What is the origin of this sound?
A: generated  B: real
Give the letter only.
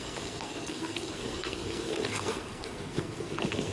A